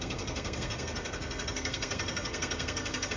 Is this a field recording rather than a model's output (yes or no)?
no